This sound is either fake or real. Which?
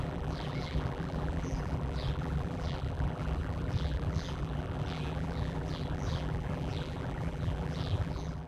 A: fake